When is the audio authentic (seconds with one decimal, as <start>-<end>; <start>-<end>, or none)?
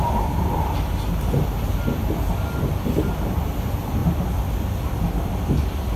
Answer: 0.0-6.0